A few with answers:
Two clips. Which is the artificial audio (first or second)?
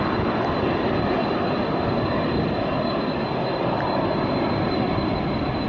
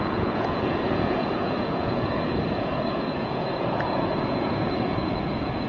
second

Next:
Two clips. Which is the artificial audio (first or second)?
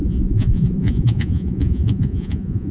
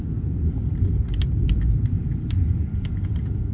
first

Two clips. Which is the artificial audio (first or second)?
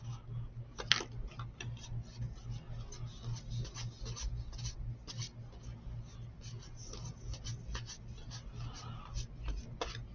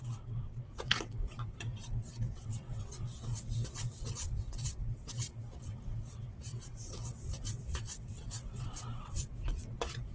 second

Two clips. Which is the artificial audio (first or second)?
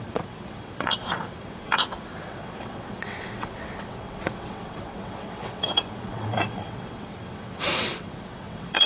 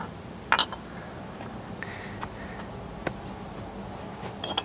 first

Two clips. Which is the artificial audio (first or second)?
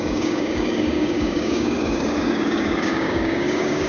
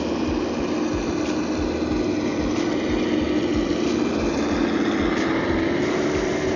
first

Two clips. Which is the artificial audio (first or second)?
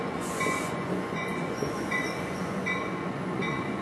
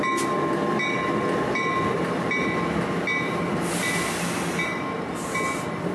first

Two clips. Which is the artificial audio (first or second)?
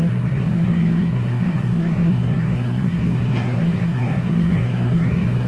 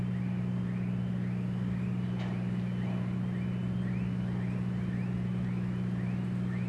first